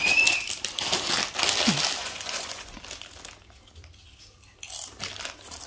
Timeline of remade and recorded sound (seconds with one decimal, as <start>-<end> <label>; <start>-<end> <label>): 0.0-2.0 recorded; 2.0-2.8 remade; 2.8-5.7 recorded